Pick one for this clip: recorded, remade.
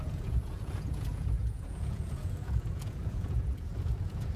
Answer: remade